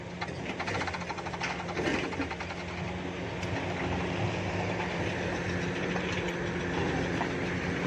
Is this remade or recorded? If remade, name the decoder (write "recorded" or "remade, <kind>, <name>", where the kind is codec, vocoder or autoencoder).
recorded